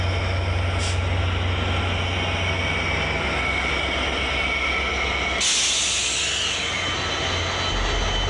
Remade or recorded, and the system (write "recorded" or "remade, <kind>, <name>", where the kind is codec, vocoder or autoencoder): recorded